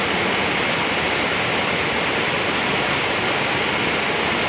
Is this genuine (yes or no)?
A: yes